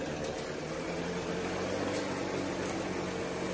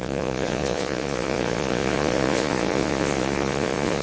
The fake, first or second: second